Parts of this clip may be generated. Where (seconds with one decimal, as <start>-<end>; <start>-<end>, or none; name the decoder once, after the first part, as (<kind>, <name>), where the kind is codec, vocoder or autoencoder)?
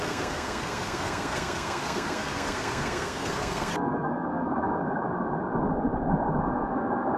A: 0.0-4.8 (codec, SNAC); 6.4-7.2